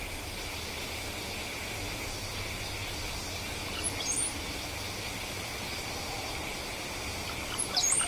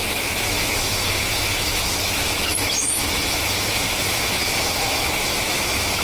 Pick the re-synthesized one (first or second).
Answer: second